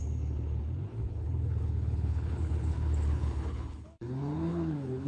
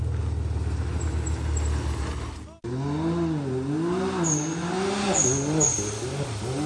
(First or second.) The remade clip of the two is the first